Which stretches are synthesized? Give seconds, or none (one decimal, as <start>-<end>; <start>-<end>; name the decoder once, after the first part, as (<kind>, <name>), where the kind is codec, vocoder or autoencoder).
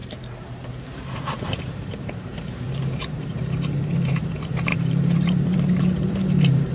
0.0-6.7 (vocoder, BigVGAN v2)